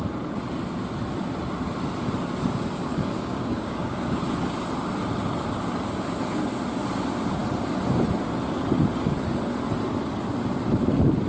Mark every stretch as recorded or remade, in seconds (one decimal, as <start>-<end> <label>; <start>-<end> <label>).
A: 0.0-2.8 recorded; 2.8-4.2 remade; 4.2-11.3 recorded